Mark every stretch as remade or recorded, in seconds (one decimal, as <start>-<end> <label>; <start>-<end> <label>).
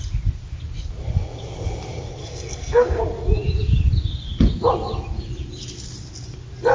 0.0-2.2 recorded; 2.2-3.0 remade; 3.0-6.7 recorded